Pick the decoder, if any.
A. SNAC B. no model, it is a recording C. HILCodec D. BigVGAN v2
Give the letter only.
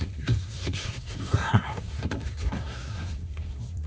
A